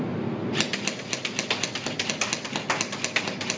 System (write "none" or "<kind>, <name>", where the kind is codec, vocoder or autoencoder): none